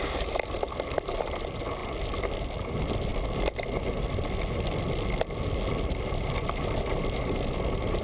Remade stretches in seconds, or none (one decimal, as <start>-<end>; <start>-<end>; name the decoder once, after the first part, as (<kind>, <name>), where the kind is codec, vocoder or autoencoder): none